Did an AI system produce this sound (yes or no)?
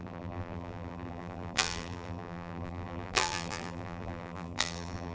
yes